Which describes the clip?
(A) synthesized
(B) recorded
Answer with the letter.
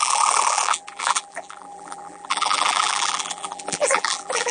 A